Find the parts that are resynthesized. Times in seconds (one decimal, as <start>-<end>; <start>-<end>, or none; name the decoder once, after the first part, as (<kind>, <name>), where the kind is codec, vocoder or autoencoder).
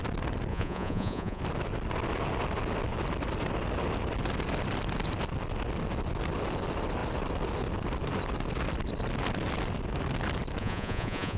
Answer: 0.5-1.4 (vocoder, Vocos); 10.6-11.4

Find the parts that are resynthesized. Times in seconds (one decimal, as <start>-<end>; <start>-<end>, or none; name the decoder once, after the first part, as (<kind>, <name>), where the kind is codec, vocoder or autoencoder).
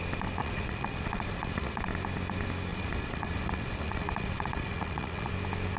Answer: 0.4-1.8 (vocoder, Vocos); 2.7-5.3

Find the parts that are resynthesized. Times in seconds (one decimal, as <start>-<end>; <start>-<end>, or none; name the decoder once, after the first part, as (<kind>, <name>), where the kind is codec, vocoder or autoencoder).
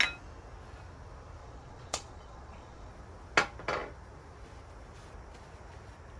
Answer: 1.4-2.9 (vocoder, Vocos)